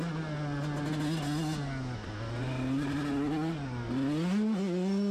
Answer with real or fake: real